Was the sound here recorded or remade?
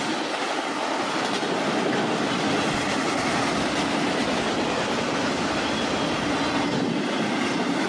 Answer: recorded